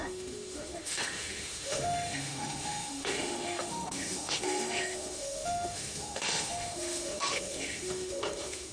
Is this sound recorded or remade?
remade